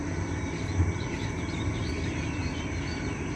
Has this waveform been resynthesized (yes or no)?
yes